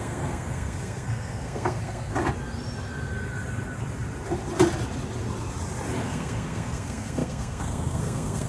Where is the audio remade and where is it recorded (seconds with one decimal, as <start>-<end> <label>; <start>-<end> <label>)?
0.0-2.1 remade; 2.1-6.0 recorded; 6.0-8.5 remade